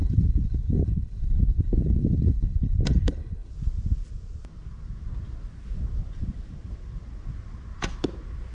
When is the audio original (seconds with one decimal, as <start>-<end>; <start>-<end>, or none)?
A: 3.5-8.5